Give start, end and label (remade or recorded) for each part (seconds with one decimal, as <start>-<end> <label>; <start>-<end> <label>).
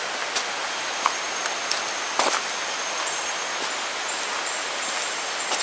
0.0-5.6 recorded